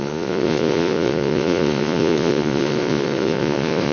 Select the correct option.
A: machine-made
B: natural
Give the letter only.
A